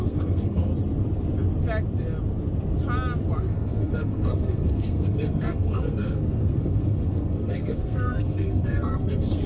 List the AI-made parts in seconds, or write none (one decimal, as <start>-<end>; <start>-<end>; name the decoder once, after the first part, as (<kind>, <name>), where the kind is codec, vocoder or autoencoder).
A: 0.0-0.7 (codec, SNAC); 3.4-9.5